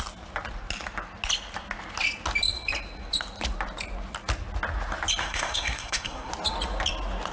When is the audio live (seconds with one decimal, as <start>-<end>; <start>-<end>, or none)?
0.0-5.2; 6.3-7.3